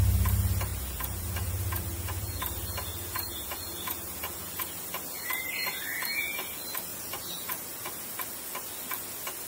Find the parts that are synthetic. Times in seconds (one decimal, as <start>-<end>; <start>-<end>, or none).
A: 0.7-2.4; 2.9-4.8; 6.9-7.9